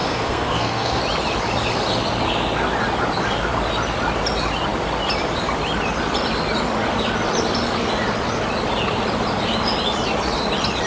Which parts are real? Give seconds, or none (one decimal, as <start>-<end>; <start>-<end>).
1.0-10.9